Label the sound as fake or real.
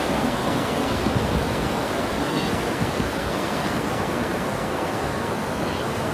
fake